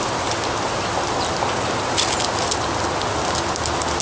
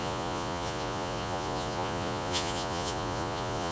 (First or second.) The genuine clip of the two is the first